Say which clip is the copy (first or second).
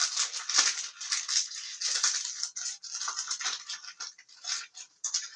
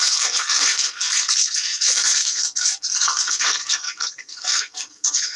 second